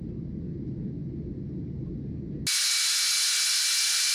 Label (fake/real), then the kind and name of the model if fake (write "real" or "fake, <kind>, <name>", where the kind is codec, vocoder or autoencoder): real